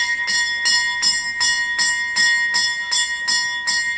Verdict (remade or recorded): recorded